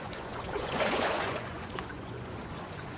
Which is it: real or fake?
fake